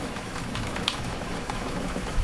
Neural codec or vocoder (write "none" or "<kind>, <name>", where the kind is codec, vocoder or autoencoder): autoencoder, DAC-VAE